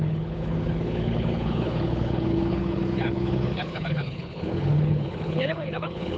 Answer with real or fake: fake